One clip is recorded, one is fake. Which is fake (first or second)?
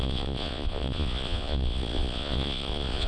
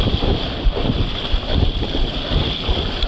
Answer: first